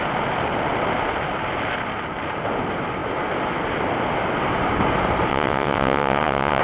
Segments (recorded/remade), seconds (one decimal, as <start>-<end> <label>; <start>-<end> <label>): 0.0-5.3 recorded; 5.3-6.6 remade